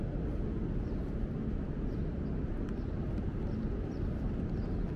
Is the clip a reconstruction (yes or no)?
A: no